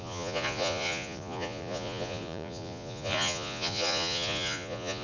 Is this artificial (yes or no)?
yes